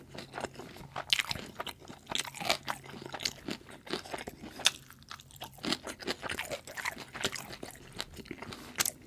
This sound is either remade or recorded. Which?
recorded